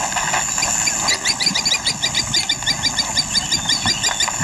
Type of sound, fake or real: real